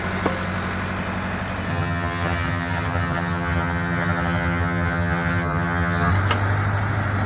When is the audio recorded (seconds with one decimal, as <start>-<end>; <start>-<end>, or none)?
0.0-1.7; 6.1-7.3